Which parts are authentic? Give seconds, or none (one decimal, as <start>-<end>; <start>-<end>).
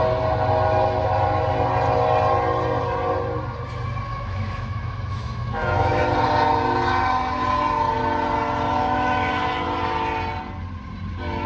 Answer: 0.0-4.1; 6.0-8.8; 9.3-11.5